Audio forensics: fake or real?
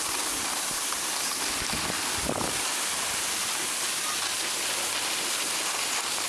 real